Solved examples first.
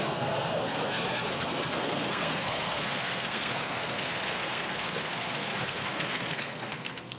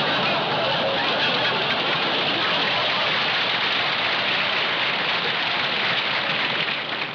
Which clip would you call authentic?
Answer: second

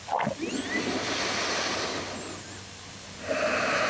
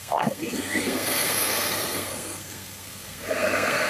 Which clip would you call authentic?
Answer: first